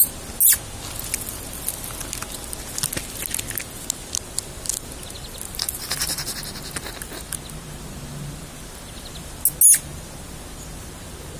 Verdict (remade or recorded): recorded